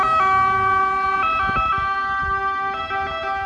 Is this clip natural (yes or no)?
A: yes